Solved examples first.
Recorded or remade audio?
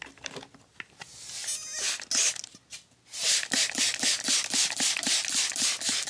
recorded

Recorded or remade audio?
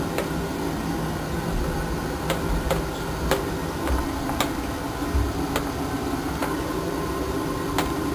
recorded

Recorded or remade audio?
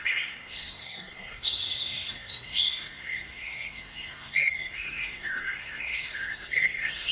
remade